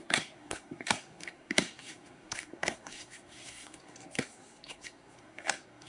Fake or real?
fake